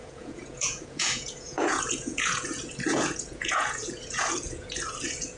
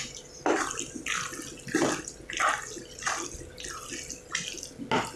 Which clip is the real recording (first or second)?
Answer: second